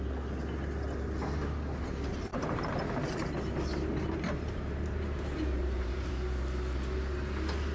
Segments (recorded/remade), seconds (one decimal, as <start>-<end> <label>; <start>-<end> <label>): 0.0-2.3 recorded; 2.3-6.1 remade; 6.1-7.7 recorded